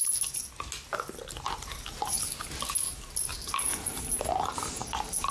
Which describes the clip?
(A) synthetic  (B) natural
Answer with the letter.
B